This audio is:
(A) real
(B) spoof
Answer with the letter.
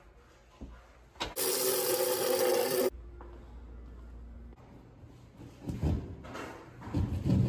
A